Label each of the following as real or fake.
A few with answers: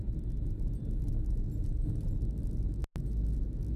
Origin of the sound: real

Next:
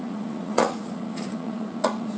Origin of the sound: fake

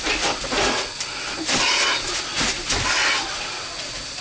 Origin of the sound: real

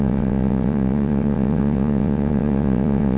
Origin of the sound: fake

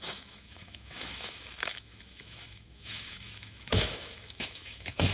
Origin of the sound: fake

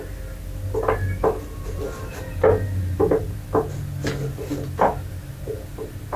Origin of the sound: real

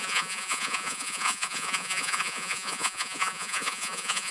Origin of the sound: fake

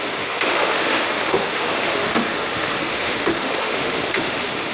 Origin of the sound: fake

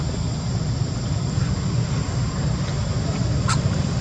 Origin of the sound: real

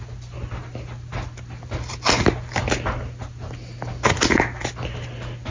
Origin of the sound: real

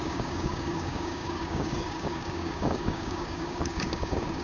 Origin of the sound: fake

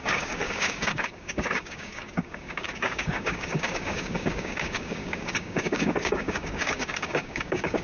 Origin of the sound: fake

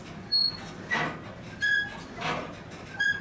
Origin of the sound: real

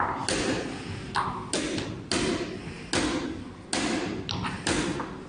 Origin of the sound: real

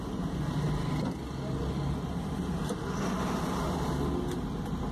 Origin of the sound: real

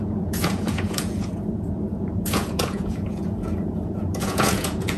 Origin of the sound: fake